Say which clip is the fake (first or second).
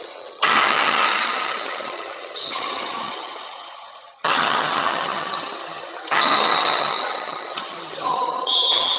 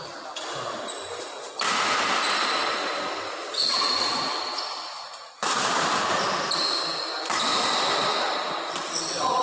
first